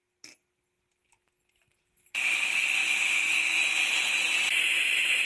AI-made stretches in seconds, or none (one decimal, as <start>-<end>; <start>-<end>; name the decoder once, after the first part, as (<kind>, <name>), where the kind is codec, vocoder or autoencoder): 2.8-3.6 (autoencoder, DAC-VAE)